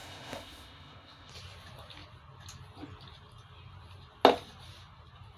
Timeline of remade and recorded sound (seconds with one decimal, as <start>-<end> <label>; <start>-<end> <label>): 0.0-1.3 remade; 1.3-5.4 recorded